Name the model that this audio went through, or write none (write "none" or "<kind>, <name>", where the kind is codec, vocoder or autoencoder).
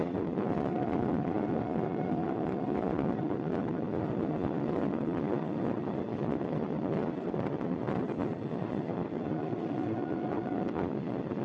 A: vocoder, Vocos